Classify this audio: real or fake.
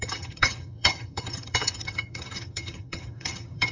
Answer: fake